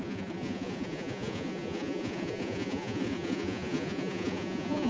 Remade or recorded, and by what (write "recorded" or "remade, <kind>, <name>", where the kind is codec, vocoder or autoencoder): remade, vocoder, Vocos